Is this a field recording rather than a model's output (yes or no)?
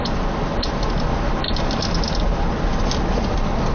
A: yes